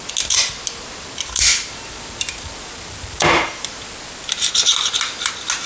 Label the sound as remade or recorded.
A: recorded